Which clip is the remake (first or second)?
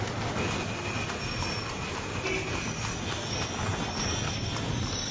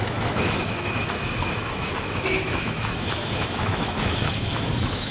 second